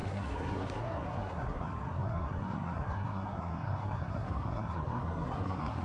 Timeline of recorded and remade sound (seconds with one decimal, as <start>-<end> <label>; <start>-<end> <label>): 0.0-5.8 remade